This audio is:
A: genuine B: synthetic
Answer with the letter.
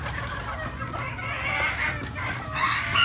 A